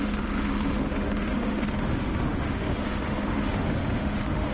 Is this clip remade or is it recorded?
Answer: remade